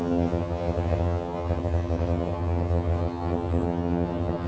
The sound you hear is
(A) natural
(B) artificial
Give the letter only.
B